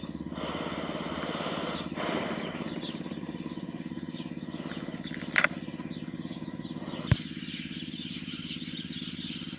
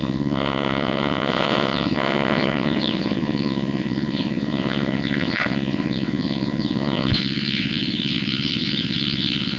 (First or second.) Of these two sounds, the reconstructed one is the second